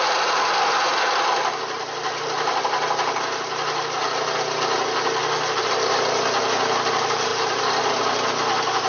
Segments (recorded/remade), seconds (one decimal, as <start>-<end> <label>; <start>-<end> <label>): 0.0-5.2 recorded; 5.2-5.9 remade; 5.9-7.3 recorded; 7.3-8.0 remade; 8.0-8.9 recorded